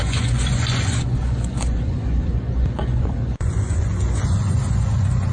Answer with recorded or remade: remade